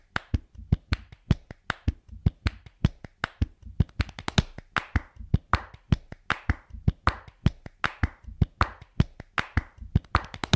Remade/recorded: recorded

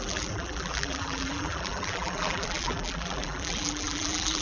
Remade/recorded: remade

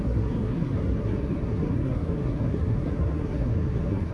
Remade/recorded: remade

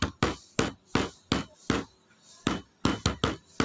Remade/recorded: recorded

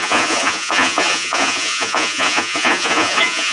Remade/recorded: remade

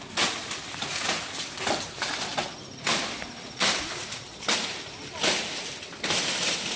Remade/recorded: recorded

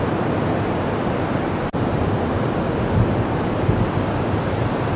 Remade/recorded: recorded